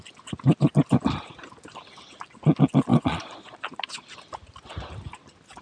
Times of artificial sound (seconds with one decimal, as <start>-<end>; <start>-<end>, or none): 2.9-4.0